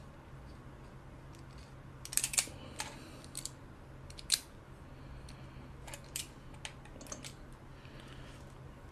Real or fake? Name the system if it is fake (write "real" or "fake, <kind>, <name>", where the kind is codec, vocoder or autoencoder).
real